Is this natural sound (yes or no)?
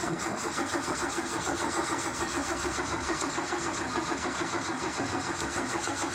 no